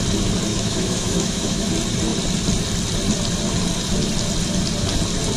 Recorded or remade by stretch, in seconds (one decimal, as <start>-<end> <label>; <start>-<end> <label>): 0.0-0.5 recorded; 0.5-1.7 remade; 1.7-5.4 recorded